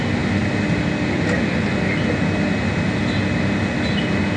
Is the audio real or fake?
real